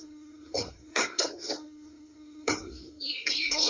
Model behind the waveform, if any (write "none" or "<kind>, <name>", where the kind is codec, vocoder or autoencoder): codec, SNAC